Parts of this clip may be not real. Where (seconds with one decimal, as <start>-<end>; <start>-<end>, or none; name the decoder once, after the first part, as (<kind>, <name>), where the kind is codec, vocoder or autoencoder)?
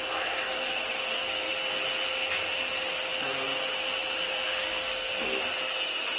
0.4-1.5 (codec, SNAC); 4.5-5.4